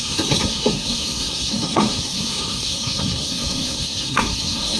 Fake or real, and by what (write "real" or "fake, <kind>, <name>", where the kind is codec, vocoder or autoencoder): fake, codec, SNAC